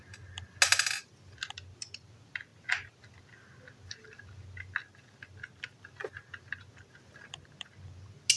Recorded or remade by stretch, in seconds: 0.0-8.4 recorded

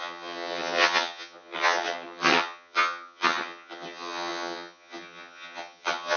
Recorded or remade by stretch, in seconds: 0.0-6.2 remade